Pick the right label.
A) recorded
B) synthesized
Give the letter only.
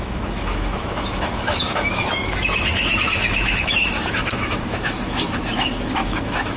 B